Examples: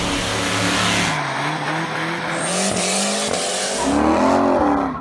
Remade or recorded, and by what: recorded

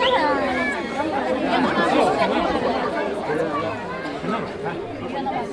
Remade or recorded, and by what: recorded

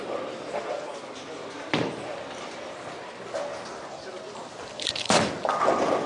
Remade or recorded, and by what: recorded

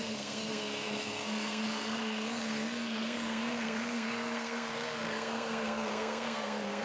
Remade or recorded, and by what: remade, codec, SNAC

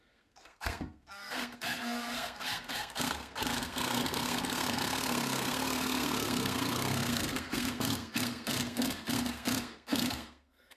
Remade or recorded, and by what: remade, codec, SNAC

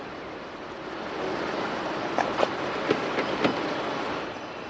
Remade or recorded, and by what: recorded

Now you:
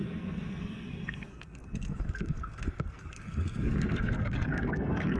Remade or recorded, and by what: remade, codec, SNAC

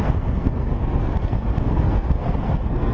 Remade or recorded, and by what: remade, codec, SNAC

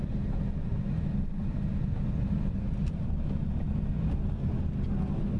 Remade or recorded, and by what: recorded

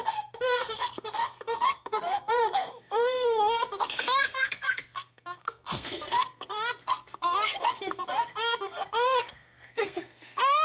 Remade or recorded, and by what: remade, codec, SNAC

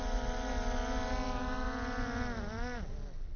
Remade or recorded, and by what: recorded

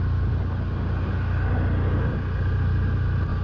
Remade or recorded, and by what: recorded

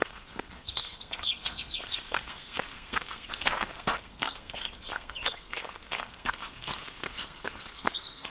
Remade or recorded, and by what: remade, codec, SNAC